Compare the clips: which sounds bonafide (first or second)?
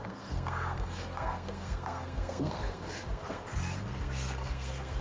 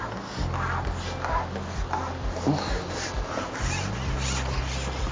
second